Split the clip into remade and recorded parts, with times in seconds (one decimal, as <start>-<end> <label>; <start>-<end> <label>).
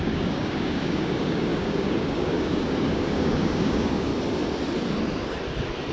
0.0-4.1 remade; 4.1-5.9 recorded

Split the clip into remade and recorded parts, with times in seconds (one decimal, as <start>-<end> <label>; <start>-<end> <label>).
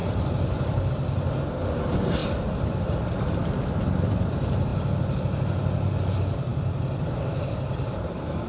0.0-0.9 remade; 0.9-2.2 recorded; 2.2-4.2 remade; 4.2-6.5 recorded; 6.5-7.6 remade; 7.6-8.5 recorded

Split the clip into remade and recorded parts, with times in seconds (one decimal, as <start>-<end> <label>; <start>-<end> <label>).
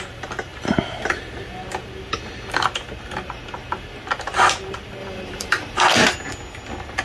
0.0-5.0 recorded; 5.0-5.9 remade; 5.9-7.0 recorded